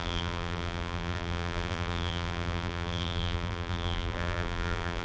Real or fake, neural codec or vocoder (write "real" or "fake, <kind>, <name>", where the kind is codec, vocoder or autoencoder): fake, vocoder, BigVGAN v2